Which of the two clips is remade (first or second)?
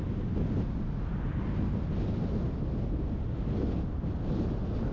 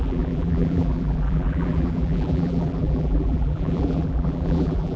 second